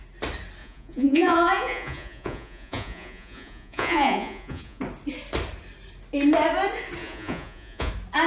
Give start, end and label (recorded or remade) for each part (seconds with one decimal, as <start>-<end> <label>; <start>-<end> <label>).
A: 0.0-0.6 recorded; 0.6-4.8 remade; 4.8-7.0 recorded; 7.0-7.9 remade; 7.9-8.3 recorded